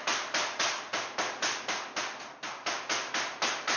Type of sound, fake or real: real